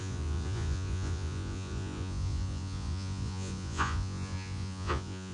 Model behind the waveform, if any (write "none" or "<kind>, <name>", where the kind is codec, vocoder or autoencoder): vocoder, Vocos